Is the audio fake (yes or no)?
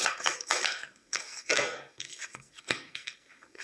yes